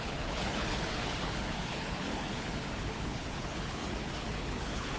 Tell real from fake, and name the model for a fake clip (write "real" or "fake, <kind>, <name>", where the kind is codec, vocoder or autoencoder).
fake, codec, HILCodec